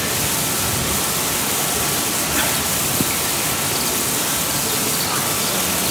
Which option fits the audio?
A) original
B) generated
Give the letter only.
A